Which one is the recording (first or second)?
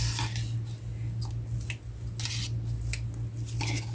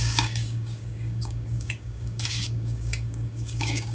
first